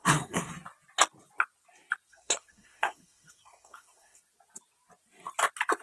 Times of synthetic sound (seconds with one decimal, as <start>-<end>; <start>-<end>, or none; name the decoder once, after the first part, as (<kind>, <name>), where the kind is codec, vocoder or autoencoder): 0.0-0.5 (codec, SNAC); 2.1-4.2